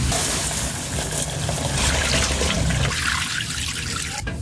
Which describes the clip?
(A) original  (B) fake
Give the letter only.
A